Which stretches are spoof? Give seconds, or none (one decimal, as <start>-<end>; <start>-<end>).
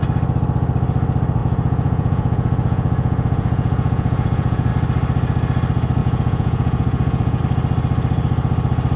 1.4-4.7; 6.0-7.4